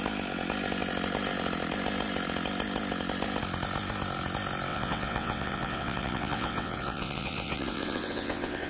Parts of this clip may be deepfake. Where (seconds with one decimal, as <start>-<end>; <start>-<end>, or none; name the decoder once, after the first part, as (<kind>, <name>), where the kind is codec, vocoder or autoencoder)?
4.7-8.7 (vocoder, WaveNeXt)